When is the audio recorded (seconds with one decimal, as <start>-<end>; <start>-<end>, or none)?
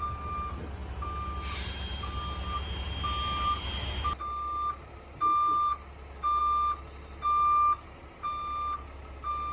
0.0-9.5